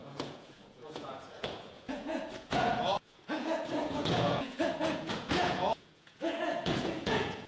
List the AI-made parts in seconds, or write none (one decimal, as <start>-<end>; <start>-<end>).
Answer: 0.0-7.5